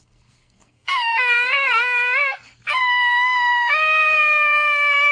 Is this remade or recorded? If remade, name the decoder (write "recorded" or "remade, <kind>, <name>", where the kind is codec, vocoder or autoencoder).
remade, codec, SNAC